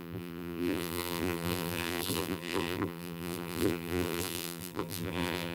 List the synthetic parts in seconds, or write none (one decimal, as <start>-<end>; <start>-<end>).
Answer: 0.0-5.5